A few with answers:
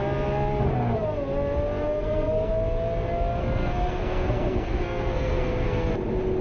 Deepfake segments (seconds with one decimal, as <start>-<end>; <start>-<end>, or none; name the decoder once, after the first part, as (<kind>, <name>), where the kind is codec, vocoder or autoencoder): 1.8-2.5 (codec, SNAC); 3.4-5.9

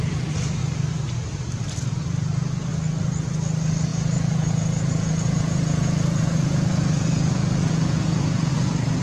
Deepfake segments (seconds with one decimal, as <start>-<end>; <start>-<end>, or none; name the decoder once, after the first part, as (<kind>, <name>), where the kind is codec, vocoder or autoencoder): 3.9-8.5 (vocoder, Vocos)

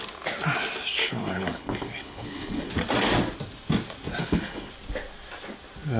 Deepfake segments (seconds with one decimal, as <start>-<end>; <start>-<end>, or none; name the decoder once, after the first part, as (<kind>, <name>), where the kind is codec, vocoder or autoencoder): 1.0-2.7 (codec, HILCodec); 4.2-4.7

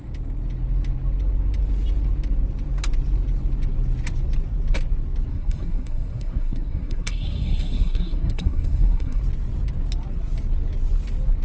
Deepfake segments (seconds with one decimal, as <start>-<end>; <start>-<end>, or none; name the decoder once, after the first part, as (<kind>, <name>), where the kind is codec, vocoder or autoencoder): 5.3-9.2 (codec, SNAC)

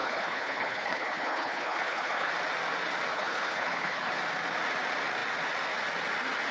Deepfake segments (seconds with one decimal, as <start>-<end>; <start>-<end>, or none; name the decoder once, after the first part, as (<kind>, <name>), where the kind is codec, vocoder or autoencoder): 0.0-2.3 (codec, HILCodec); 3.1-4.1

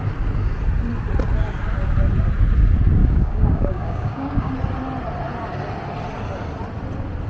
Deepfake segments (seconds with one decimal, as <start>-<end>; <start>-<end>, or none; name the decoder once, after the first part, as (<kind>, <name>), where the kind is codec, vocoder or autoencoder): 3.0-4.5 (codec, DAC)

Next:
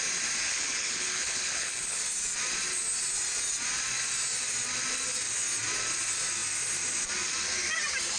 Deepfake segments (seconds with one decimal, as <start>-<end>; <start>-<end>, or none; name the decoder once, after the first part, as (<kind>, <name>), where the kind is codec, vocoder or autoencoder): 0.5-2.0 (codec, HILCodec)

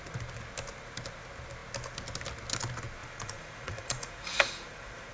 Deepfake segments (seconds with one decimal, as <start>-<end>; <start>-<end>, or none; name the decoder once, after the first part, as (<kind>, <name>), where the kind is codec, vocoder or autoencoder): 3.0-5.1 (vocoder, Vocos)